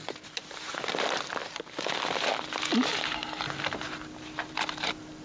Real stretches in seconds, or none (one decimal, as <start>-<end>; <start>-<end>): 1.4-4.5